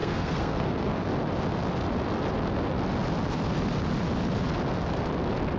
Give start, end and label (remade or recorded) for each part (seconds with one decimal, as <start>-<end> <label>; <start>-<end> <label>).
0.0-1.1 remade; 1.1-5.6 recorded